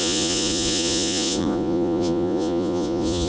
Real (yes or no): no